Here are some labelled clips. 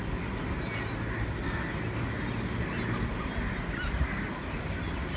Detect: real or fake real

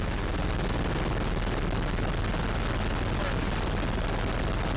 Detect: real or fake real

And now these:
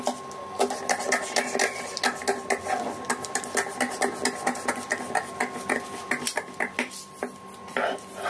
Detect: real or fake real